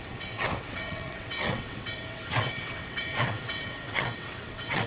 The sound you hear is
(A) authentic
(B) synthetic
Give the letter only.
B